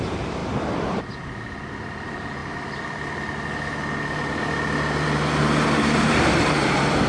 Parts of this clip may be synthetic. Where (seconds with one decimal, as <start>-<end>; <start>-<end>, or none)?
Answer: 0.0-2.4; 5.7-7.1